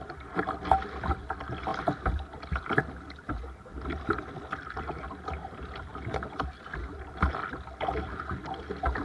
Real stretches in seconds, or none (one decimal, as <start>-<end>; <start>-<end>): 0.0-9.0